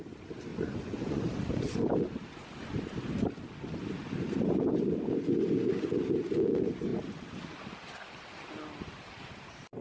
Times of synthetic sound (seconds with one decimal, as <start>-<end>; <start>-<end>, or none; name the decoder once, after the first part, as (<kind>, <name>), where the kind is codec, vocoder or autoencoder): 0.5-1.2 (vocoder, Vocos)